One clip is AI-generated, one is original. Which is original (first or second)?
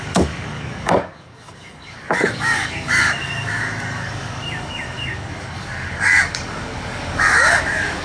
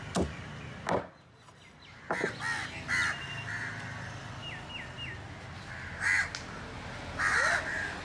second